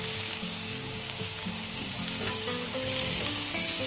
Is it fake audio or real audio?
fake